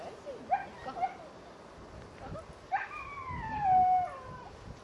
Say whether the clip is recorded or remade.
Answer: recorded